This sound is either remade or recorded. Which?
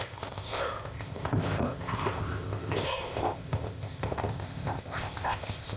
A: remade